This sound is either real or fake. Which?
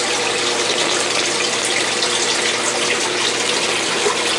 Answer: real